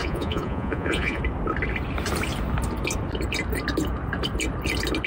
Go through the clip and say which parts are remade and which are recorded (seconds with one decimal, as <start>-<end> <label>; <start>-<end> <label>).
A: 0.0-1.2 remade; 1.2-5.1 recorded